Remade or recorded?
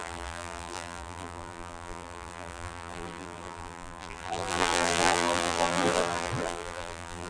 remade